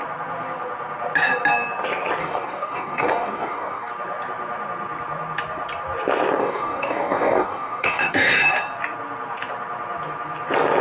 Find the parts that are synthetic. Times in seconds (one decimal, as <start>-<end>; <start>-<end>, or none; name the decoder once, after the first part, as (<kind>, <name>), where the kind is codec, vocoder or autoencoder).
2.2-3.9 (codec, DAC); 6.4-8.5